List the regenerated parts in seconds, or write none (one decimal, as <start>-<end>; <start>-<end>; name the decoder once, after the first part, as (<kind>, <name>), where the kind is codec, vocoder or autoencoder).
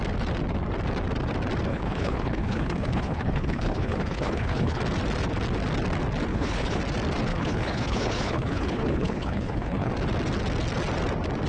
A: 1.7-4.8 (codec, HILCodec); 6.3-6.8; 7.3-9.9